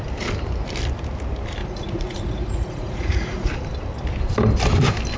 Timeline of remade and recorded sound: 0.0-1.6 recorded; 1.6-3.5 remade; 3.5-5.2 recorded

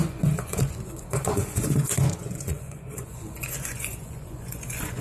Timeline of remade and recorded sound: 0.0-5.0 remade

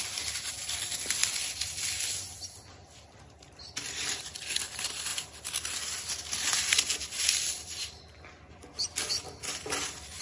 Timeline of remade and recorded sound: 0.0-10.2 recorded

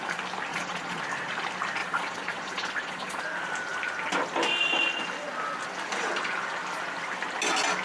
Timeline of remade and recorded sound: 0.0-0.5 recorded; 0.5-1.0 remade; 1.0-1.8 recorded; 1.8-3.2 remade; 3.2-7.8 recorded

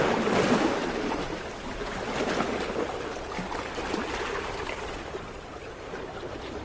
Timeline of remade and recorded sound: 0.0-6.6 recorded

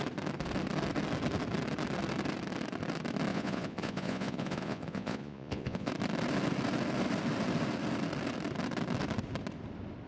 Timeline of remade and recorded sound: 0.0-3.3 recorded; 3.3-5.9 remade; 5.9-10.1 recorded

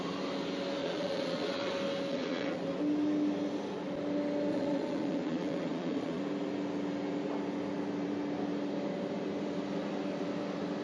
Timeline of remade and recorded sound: 0.0-0.8 recorded; 0.8-1.7 remade; 1.7-2.1 recorded; 2.1-2.6 remade; 2.6-4.5 recorded; 4.5-6.2 remade; 6.2-10.8 recorded